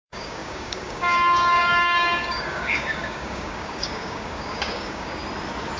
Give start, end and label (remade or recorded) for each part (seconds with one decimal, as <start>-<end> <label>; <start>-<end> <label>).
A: 0.0-5.2 remade; 5.2-5.8 recorded